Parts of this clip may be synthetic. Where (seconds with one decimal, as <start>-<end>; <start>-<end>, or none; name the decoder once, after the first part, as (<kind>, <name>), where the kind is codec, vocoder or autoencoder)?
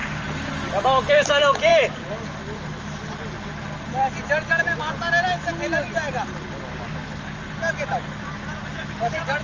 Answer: none